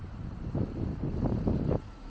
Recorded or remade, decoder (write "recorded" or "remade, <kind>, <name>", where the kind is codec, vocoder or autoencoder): recorded